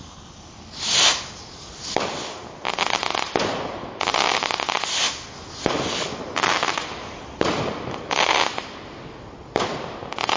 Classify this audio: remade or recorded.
recorded